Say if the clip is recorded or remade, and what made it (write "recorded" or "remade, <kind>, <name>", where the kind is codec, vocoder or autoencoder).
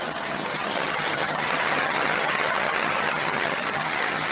remade, vocoder, HiFi-GAN